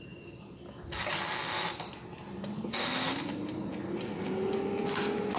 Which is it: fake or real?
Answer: real